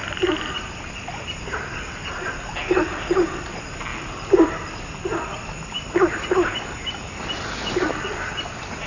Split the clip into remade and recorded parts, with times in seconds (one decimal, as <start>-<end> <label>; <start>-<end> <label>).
0.0-8.9 recorded